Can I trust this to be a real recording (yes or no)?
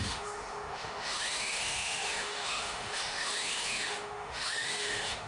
no